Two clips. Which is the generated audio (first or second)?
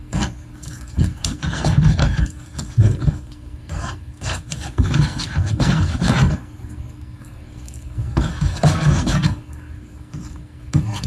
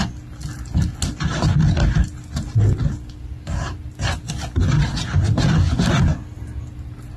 first